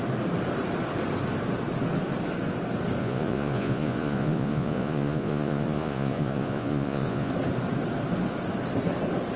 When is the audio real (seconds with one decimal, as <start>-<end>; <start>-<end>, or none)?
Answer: 0.0-3.0; 7.3-9.4